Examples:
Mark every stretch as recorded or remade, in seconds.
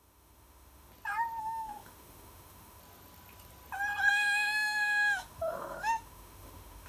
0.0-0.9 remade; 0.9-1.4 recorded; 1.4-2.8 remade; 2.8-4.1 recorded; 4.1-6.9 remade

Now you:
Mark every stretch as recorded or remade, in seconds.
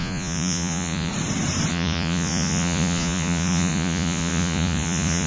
0.0-1.1 remade; 1.1-1.7 recorded; 1.7-5.3 remade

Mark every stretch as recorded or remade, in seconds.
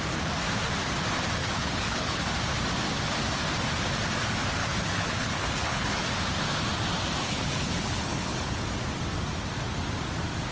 0.0-1.4 recorded; 1.4-2.2 remade; 2.2-4.6 recorded; 4.6-6.0 remade; 6.0-7.2 recorded; 7.2-8.6 remade; 8.6-10.5 recorded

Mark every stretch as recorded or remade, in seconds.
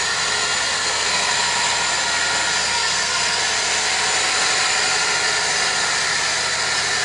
0.0-0.8 recorded; 0.8-1.3 remade; 1.3-2.6 recorded; 2.6-3.4 remade; 3.4-7.0 recorded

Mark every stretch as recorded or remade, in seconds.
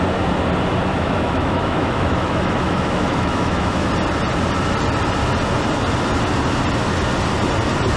0.0-0.9 recorded; 0.9-3.9 remade; 3.9-8.0 recorded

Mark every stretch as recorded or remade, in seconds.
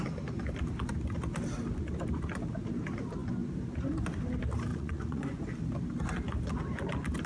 0.0-4.7 recorded; 4.7-5.4 remade; 5.4-7.3 recorded